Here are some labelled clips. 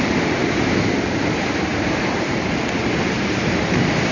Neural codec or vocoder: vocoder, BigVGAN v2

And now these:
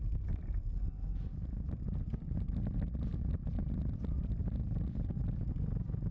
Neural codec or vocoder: none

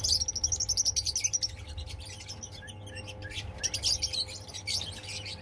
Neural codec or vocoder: none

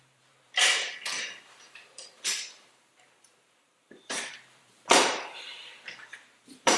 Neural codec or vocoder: vocoder, BigVGAN v2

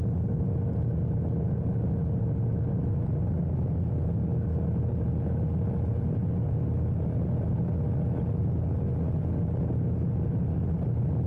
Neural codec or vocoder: none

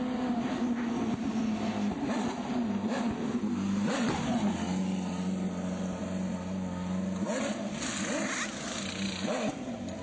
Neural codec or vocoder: none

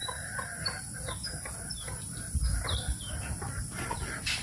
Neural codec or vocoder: vocoder, BigVGAN v2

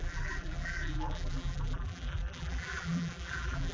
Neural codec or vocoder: vocoder, BigVGAN v2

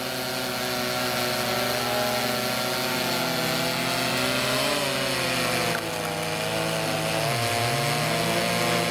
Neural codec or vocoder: none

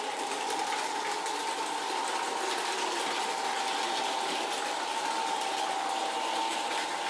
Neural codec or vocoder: none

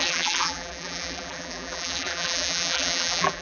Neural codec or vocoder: vocoder, BigVGAN v2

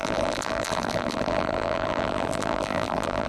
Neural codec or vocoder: vocoder, BigVGAN v2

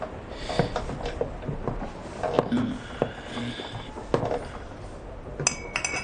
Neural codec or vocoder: none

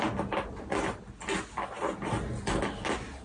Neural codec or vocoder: none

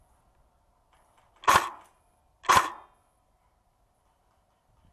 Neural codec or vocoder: none